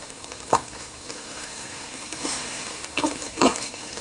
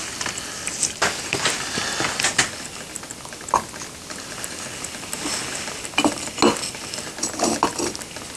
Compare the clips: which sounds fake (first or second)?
first